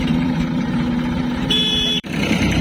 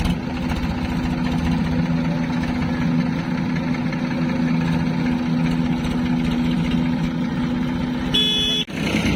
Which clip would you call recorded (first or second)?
second